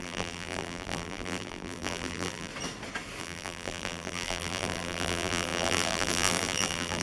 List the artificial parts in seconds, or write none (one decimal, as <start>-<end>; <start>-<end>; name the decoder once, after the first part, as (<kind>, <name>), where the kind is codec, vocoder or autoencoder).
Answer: 0.0-2.5 (vocoder, BigVGAN v2); 3.2-7.0